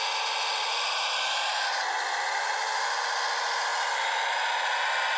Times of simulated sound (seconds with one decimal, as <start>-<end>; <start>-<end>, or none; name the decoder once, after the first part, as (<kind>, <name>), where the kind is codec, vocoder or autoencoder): 1.5-2.5 (vocoder, BigVGAN v2)